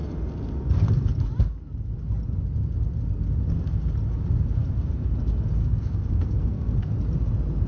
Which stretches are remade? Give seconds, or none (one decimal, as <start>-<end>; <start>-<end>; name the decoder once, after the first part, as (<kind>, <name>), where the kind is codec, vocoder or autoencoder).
5.6-6.9 (codec, SNAC)